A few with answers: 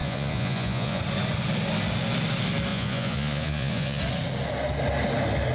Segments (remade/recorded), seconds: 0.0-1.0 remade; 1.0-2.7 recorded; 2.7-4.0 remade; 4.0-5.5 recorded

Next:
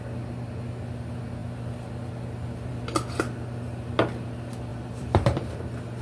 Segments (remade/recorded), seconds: 0.0-4.7 recorded; 4.7-6.0 remade